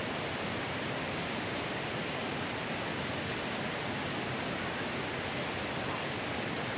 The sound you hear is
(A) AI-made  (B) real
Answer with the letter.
B